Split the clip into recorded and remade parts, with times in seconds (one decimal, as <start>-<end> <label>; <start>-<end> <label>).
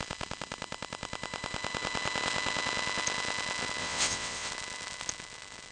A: 0.0-3.8 recorded; 3.8-4.5 remade; 4.5-5.7 recorded